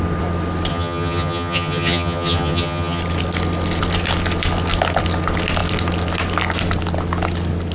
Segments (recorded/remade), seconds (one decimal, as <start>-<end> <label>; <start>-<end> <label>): 0.0-0.7 recorded; 0.7-3.0 remade; 3.0-7.7 recorded